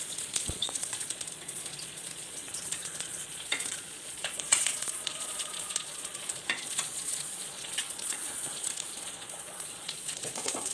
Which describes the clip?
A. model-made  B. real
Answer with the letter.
A